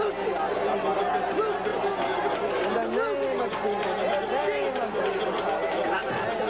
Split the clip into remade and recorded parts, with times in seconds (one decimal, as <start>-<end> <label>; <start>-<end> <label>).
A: 0.0-6.5 recorded